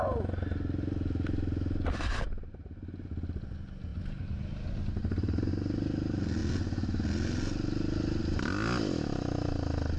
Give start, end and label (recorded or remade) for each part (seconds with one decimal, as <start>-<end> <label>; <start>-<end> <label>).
0.0-3.9 recorded; 3.9-5.5 remade; 5.5-10.0 recorded